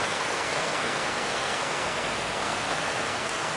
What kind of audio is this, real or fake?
fake